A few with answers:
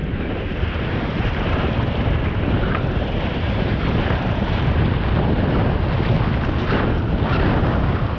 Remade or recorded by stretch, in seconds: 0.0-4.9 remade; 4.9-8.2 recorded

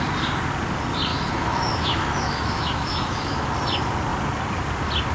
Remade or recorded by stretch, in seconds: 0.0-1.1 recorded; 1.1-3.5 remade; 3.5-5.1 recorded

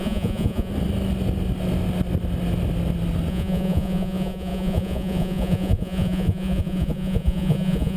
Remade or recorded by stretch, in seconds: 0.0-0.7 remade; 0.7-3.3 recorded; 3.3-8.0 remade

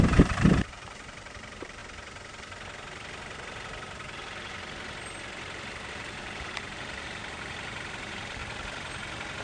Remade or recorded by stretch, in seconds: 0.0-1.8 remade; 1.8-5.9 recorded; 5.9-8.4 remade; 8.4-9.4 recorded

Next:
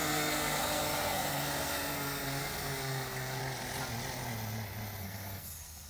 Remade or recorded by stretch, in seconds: 0.0-3.4 remade; 3.4-5.0 recorded; 5.0-5.9 remade

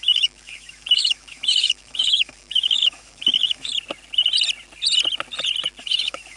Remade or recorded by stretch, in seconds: 0.0-3.7 remade; 3.7-5.8 recorded; 5.8-6.4 remade

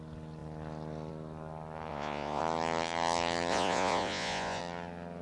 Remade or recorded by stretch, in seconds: 0.0-1.9 recorded; 1.9-2.4 remade; 2.4-3.5 recorded; 3.5-4.6 remade; 4.6-5.2 recorded

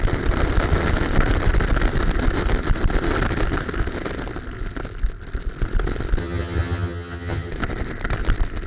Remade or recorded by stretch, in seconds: 0.0-6.2 recorded; 6.2-7.5 remade; 7.5-8.7 recorded